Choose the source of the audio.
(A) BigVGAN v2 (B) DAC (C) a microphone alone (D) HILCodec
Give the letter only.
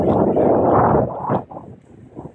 C